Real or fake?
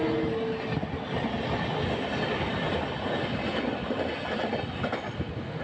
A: real